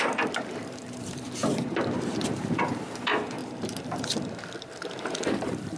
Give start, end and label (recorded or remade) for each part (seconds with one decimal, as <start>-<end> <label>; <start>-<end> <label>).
0.0-5.8 remade